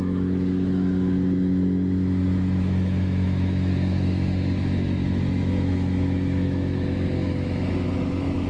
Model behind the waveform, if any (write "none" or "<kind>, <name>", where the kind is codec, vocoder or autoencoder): autoencoder, DAC-VAE